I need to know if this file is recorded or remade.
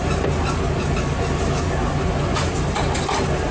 recorded